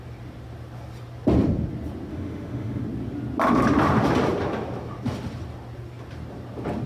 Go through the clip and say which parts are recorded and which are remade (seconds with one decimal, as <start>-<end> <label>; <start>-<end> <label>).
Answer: 0.0-2.1 recorded; 2.1-2.8 remade; 2.8-6.9 recorded